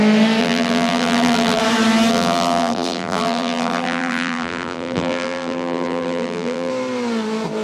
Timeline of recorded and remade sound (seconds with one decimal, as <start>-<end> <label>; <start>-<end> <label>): 0.0-0.4 recorded; 0.4-1.6 remade; 1.6-2.1 recorded; 2.1-6.7 remade; 6.7-7.6 recorded